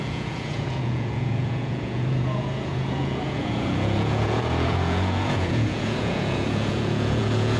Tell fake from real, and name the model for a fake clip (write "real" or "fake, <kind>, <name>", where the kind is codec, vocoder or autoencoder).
fake, vocoder, Vocos